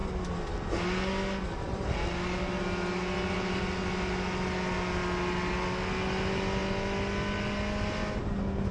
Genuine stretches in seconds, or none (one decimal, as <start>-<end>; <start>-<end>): 0.0-8.7